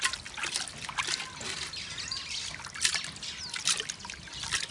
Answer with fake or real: real